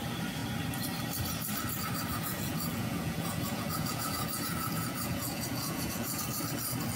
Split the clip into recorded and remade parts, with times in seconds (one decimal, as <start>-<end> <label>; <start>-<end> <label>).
0.0-2.1 recorded; 2.1-6.2 remade; 6.2-6.9 recorded